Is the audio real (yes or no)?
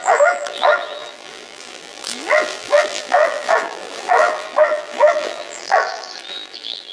no